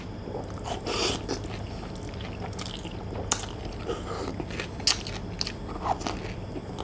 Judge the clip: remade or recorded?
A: recorded